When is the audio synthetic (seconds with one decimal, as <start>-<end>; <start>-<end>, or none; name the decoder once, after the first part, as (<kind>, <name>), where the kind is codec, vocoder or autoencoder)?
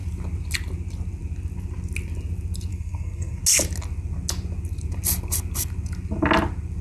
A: 2.7-3.4 (codec, SNAC)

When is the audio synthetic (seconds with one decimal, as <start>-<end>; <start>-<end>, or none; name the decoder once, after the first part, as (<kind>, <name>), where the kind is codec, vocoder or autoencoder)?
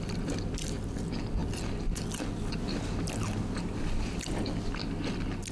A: none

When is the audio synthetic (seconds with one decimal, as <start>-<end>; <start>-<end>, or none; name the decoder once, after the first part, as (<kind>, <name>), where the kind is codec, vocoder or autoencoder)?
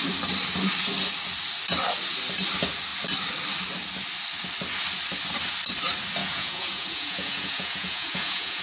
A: 6.2-8.6 (vocoder, Vocos)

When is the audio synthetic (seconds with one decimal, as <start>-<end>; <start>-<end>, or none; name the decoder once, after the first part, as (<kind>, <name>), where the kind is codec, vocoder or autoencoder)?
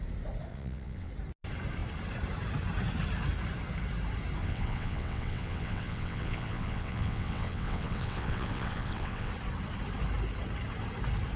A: 0.5-1.1 (vocoder, WaveNeXt); 4.4-9.3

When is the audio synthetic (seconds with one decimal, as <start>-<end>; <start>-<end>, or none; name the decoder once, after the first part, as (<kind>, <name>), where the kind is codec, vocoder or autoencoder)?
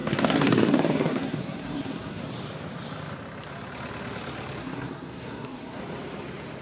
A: 0.0-2.2 (codec, SNAC); 4.6-5.8